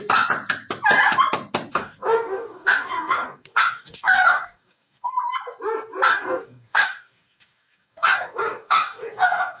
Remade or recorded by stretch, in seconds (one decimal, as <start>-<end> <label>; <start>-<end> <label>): 0.0-1.7 recorded; 1.7-5.1 remade; 5.1-6.1 recorded; 6.1-9.6 remade